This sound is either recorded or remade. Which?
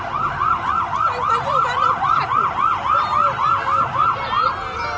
recorded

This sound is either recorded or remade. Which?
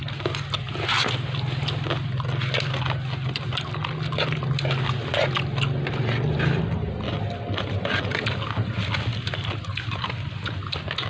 recorded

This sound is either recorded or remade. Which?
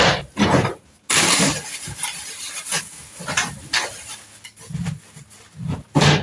recorded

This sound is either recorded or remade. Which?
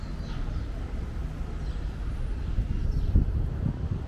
recorded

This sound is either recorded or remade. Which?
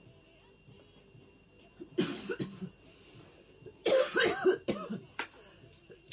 recorded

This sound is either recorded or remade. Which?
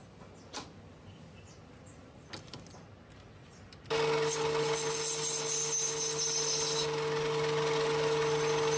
recorded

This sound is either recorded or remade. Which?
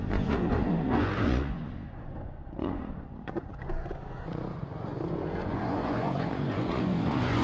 remade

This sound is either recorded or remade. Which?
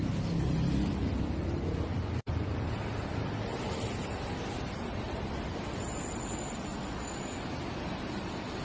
recorded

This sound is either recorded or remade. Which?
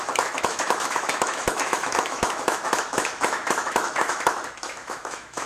remade